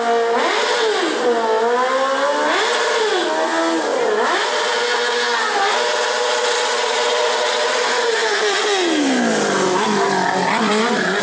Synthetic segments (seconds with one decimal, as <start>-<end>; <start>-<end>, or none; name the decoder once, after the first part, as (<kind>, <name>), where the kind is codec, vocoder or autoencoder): none